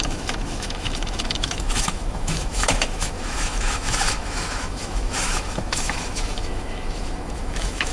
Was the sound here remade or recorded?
remade